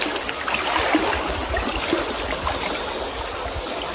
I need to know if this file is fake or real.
real